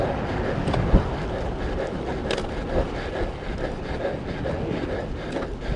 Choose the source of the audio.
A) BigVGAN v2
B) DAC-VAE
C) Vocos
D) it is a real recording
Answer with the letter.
D